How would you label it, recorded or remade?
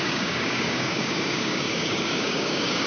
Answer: remade